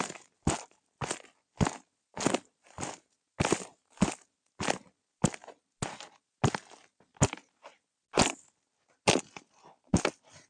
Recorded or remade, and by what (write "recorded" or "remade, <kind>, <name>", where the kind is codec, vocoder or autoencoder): recorded